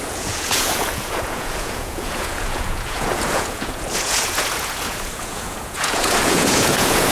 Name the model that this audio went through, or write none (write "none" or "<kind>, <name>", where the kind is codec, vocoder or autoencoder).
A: vocoder, Vocos